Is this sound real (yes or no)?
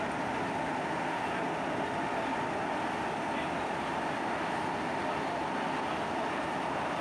yes